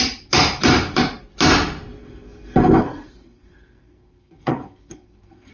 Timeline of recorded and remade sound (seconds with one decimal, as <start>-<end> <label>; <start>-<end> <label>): 0.0-2.0 recorded; 2.0-5.5 remade